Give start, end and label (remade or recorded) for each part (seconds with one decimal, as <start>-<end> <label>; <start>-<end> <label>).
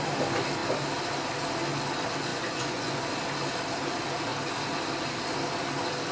0.0-2.3 recorded; 2.3-3.0 remade; 3.0-6.1 recorded